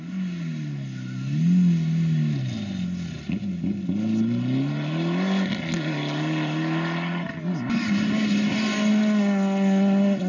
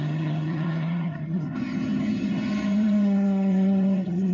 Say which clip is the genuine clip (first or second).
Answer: first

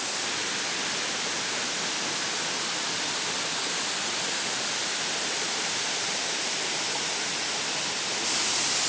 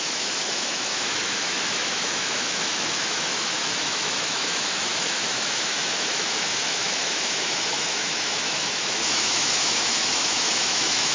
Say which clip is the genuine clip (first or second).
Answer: first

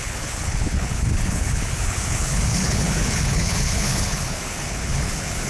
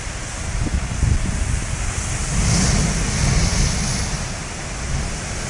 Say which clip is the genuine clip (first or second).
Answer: second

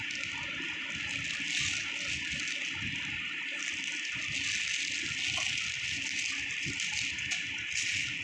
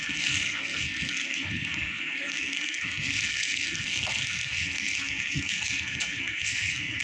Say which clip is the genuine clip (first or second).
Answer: first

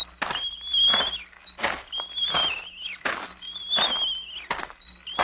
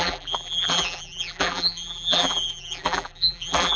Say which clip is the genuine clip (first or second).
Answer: first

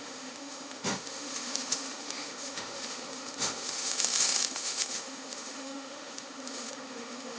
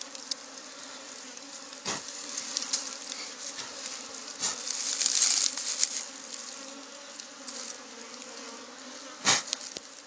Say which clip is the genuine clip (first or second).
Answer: second